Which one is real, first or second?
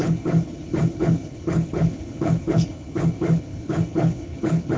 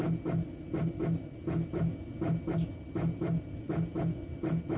second